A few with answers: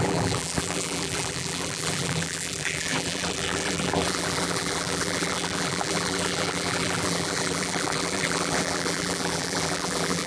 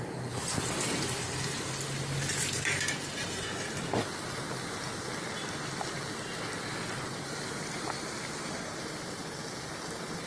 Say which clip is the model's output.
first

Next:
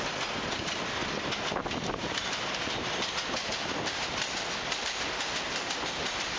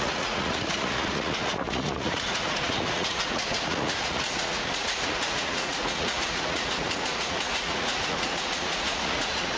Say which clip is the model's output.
second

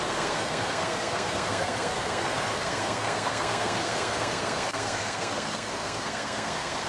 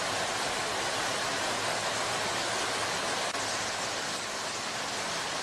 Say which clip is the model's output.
first